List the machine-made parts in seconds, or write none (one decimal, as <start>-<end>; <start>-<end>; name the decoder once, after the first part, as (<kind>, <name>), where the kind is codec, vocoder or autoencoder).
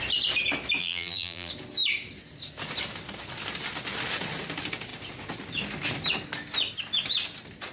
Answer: 0.8-1.5 (vocoder, BigVGAN v2)